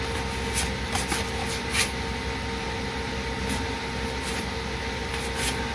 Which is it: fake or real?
real